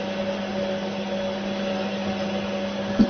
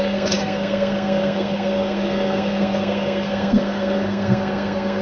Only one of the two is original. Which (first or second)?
first